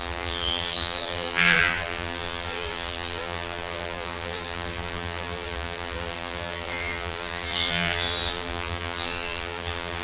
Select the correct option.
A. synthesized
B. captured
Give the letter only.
A